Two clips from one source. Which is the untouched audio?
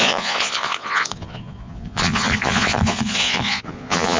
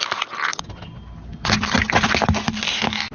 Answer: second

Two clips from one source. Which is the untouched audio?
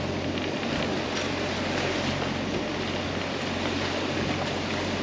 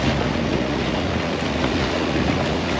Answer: first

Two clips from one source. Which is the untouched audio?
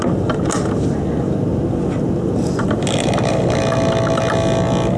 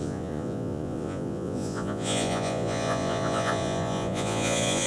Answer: first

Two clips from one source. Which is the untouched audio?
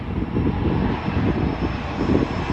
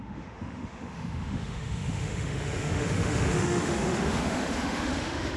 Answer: first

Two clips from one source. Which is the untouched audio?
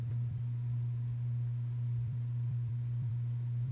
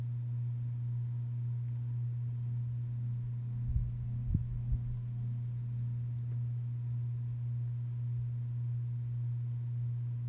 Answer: second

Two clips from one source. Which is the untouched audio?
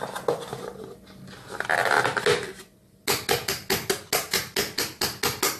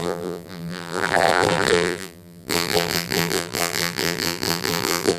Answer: first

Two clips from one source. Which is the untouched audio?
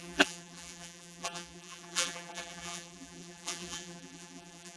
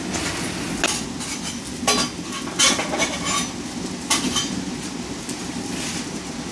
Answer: second